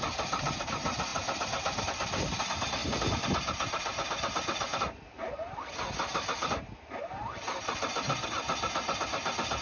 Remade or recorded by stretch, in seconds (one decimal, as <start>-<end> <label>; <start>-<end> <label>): 0.0-9.6 recorded